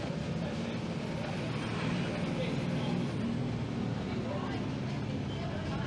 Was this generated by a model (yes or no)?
no